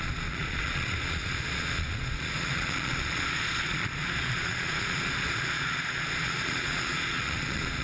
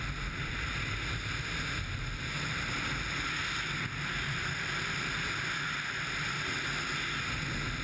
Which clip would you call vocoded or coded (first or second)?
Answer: first